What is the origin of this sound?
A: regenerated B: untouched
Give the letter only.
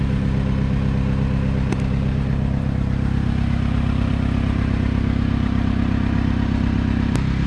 A